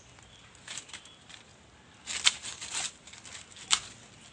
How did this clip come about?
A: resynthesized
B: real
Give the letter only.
B